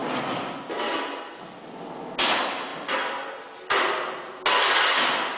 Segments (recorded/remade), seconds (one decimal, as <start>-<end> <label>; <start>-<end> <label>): 0.0-5.4 recorded